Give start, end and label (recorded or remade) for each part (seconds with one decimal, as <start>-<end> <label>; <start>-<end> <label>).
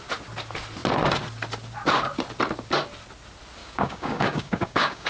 0.0-3.6 recorded; 3.6-5.1 remade